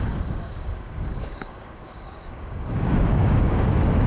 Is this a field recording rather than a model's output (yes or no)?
no